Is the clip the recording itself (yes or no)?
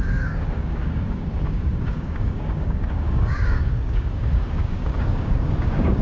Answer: no